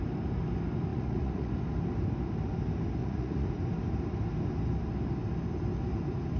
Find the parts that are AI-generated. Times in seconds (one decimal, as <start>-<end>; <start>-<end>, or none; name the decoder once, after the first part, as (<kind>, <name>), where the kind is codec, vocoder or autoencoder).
0.9-1.5 (vocoder, Vocos); 3.0-3.5

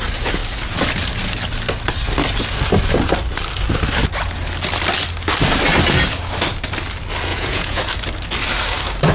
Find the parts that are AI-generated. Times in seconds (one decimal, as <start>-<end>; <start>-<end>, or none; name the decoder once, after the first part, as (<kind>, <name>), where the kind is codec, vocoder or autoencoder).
7.3-7.8 (vocoder, Vocos)